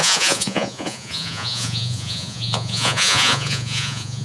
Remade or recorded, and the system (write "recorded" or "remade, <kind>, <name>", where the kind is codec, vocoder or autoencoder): remade, vocoder, Vocos